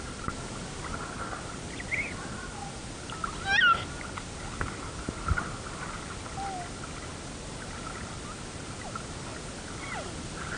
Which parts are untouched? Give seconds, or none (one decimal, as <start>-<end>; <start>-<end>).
0.0-10.6